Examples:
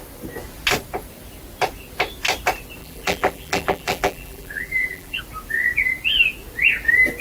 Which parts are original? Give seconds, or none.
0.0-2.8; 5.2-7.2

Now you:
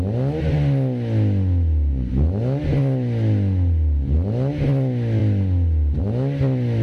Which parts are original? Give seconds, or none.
0.0-6.8

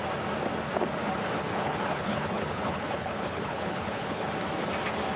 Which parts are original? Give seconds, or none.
0.0-1.5; 4.3-5.2

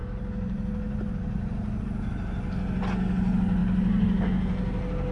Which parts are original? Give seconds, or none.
0.0-5.1

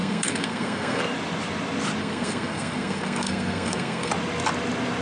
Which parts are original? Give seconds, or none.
1.0-2.0; 4.1-5.0

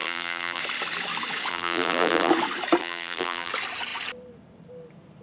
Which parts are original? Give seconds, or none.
0.6-1.5; 2.3-2.8; 3.5-5.2